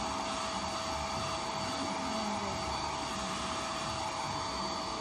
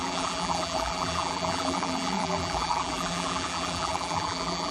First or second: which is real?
first